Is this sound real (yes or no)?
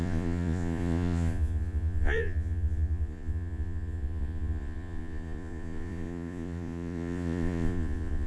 no